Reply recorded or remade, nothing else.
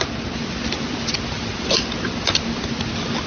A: recorded